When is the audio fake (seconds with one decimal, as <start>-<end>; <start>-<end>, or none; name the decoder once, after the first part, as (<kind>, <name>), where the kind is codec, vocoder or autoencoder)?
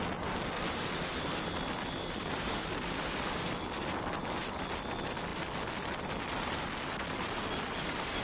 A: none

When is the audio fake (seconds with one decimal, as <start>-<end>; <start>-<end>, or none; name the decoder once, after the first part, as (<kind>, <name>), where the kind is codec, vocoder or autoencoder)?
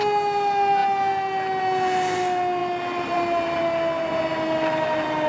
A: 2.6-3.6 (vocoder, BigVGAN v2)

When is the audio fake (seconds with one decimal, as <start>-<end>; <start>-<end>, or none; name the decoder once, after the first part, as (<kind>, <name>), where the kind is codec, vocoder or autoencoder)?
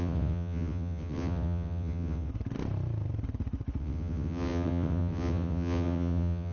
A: 0.0-2.3 (vocoder, WaveNeXt); 3.8-6.5